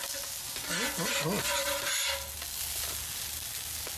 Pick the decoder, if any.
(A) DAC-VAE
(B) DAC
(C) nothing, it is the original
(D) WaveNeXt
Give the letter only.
C